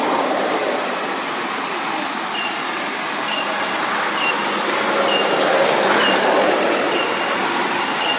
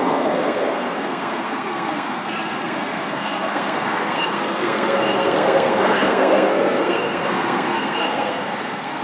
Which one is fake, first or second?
second